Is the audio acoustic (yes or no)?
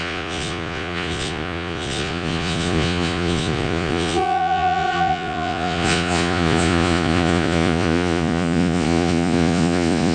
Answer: no